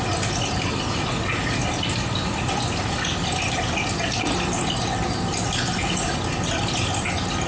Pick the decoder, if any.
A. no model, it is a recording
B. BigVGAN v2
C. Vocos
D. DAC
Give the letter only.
A